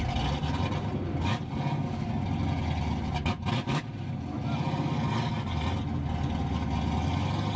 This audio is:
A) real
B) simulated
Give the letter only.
A